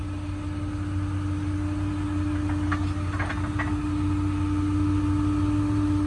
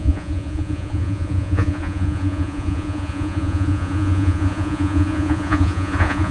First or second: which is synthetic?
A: second